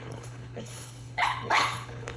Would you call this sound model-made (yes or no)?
yes